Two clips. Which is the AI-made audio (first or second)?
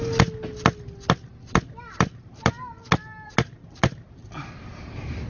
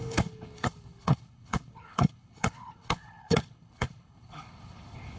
second